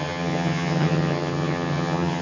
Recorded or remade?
remade